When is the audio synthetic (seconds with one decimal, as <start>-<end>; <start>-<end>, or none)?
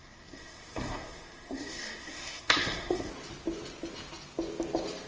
0.0-3.1